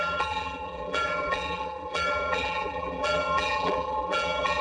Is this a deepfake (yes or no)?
yes